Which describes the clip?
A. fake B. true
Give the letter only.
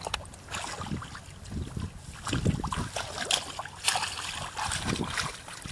B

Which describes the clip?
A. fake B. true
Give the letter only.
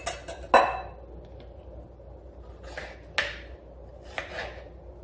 B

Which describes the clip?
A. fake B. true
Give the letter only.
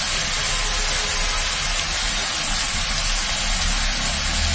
B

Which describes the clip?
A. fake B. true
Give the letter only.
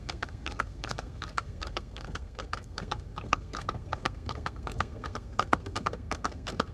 A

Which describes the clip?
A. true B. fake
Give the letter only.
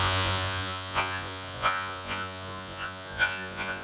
B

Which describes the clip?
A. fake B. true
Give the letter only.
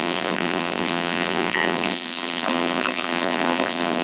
A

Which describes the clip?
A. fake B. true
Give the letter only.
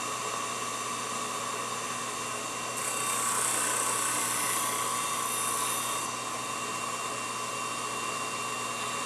B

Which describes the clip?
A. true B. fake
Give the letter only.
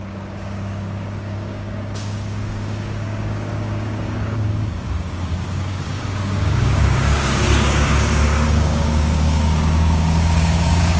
B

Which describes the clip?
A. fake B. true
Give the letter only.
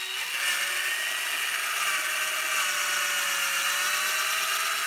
B